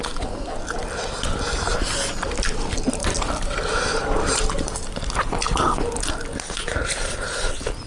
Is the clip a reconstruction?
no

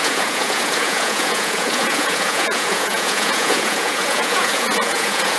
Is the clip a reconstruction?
yes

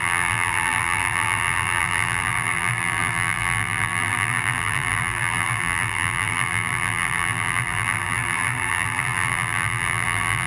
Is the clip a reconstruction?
yes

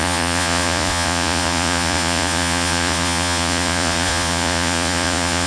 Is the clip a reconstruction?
yes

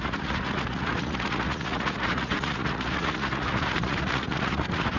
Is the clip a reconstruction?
yes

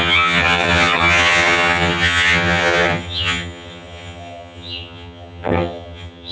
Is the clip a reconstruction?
yes